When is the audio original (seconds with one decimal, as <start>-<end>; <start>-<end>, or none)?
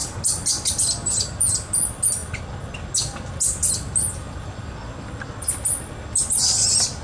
0.0-7.0